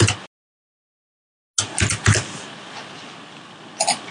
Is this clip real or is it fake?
real